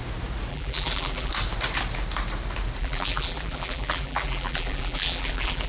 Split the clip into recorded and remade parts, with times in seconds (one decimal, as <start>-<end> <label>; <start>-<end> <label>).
0.0-0.5 recorded; 0.5-1.3 remade; 1.3-2.8 recorded; 2.8-5.7 remade